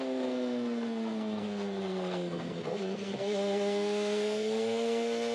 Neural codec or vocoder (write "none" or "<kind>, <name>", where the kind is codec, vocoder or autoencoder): codec, SNAC